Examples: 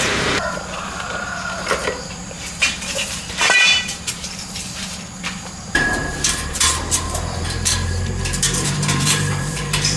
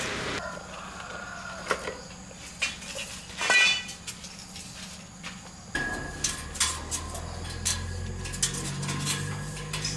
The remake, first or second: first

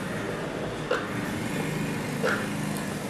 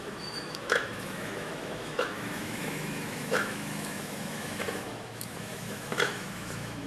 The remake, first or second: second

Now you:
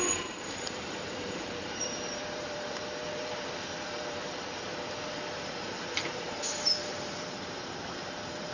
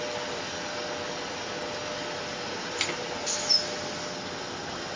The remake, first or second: first